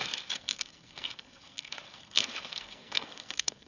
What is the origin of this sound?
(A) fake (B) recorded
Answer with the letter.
A